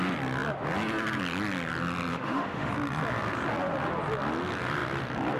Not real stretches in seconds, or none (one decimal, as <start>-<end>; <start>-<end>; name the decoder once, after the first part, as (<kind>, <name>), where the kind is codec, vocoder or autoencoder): 2.1-2.7 (autoencoder, DAC-VAE)